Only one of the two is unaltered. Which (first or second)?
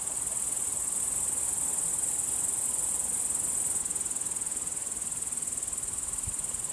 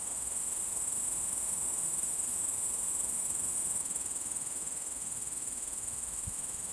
first